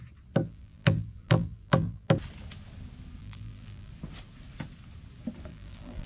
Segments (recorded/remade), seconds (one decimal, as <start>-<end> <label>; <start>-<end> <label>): 0.0-0.4 recorded; 0.4-2.1 remade; 2.1-3.2 recorded; 3.2-3.9 remade; 3.9-5.5 recorded; 5.5-6.1 remade